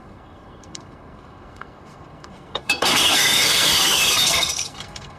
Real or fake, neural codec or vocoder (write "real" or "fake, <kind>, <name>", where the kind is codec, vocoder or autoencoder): fake, codec, SNAC